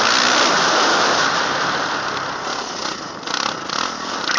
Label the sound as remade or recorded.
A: recorded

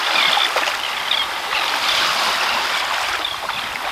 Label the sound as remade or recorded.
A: recorded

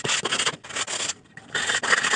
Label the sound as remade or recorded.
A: recorded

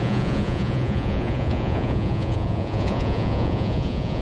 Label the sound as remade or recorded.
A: remade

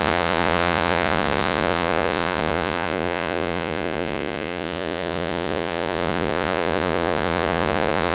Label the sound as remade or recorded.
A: remade